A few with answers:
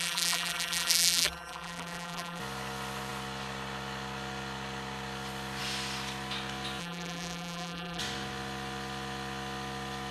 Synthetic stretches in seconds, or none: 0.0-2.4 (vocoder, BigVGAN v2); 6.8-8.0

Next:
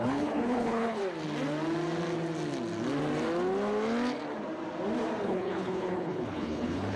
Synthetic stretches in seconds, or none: 0.0-1.0 (codec, HILCodec); 5.2-7.0